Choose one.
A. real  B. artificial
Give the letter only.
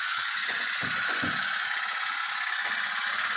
B